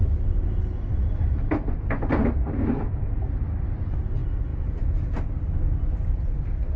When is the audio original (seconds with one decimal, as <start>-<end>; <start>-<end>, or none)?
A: 0.0-4.5; 5.1-6.8